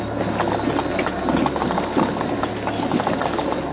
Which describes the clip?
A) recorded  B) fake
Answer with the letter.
A